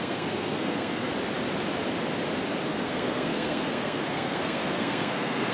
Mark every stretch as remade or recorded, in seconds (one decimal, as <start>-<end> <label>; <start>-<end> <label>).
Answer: 0.0-1.1 remade; 1.1-2.7 recorded; 2.7-5.5 remade